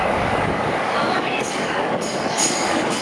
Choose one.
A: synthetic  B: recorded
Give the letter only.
A